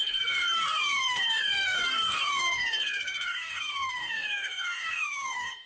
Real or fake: fake